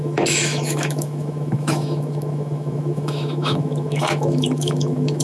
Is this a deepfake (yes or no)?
yes